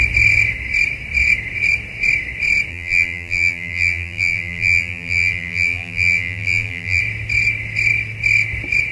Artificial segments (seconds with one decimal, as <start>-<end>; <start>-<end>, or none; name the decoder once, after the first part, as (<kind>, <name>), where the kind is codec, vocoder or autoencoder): 2.7-7.0 (vocoder, BigVGAN v2)